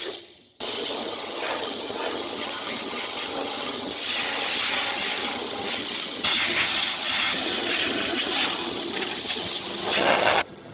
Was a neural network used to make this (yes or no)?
yes